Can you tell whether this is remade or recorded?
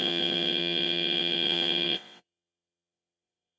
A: remade